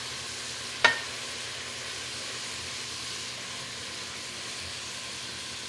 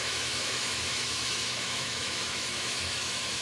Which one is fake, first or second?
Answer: second